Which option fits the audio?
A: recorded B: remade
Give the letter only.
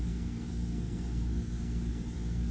B